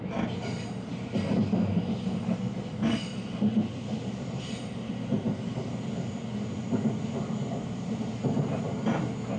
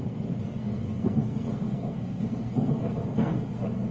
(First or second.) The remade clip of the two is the second